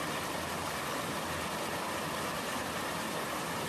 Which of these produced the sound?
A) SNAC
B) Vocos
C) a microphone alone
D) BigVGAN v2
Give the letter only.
C